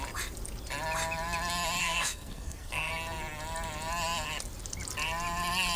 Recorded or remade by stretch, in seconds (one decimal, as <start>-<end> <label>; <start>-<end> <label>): 0.0-1.8 recorded; 1.8-2.9 remade; 2.9-5.8 recorded